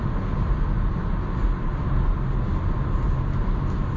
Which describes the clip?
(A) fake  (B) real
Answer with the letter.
B